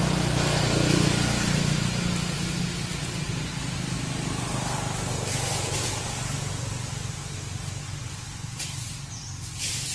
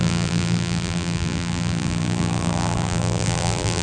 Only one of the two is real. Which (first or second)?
first